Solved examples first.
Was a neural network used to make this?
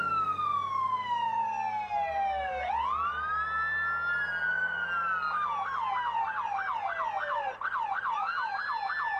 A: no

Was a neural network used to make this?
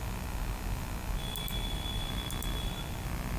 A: no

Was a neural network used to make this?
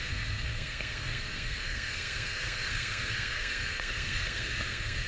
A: yes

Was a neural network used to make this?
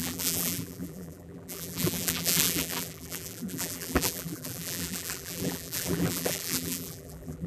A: yes